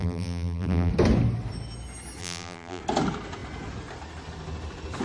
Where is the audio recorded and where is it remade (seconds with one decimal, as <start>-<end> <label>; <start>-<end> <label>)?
0.0-0.9 remade; 0.9-2.2 recorded; 2.2-2.8 remade; 2.8-5.0 recorded